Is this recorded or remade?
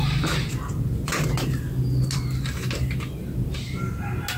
recorded